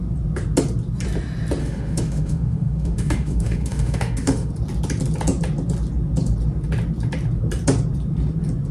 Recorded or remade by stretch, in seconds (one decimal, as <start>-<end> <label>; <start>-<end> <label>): 0.0-1.6 recorded; 1.6-4.5 remade; 4.5-8.7 recorded